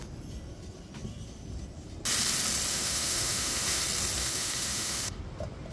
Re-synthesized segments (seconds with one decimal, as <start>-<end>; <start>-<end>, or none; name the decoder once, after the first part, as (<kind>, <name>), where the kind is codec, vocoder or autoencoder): 2.7-3.8 (autoencoder, DAC-VAE); 4.2-5.2

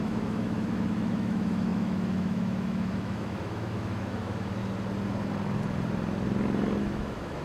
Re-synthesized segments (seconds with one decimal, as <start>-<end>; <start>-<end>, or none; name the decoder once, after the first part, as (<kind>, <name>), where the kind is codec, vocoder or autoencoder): 0.0-4.6 (autoencoder, DAC-VAE); 6.8-7.4

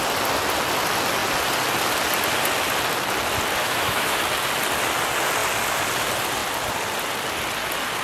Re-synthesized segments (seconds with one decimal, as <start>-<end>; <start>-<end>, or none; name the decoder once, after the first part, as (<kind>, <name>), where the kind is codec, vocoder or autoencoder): 3.6-4.2 (autoencoder, DAC-VAE)

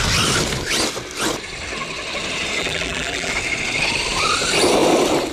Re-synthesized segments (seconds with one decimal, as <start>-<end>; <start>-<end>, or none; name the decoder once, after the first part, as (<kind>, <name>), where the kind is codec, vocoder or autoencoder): 2.6-3.3 (vocoder, BigVGAN v2)

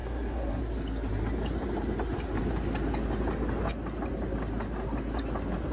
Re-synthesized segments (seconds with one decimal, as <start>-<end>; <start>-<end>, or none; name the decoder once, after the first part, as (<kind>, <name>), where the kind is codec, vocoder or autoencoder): 0.0-0.6 (codec, SNAC)

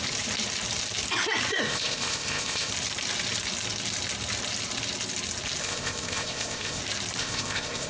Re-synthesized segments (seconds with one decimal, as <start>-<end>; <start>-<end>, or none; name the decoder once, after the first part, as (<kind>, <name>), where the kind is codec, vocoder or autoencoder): 1.5-2.7 (codec, ZipCodec); 5.6-6.8; 7.2-7.9